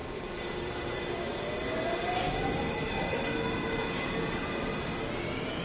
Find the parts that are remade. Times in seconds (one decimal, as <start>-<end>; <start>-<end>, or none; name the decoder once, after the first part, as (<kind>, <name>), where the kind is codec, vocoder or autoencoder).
3.8-4.6 (vocoder, Vocos)